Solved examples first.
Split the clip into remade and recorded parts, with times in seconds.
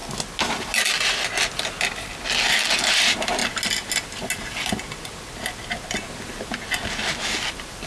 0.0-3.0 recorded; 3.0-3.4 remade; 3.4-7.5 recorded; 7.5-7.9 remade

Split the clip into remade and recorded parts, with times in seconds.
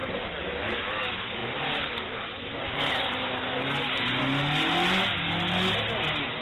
0.0-6.4 recorded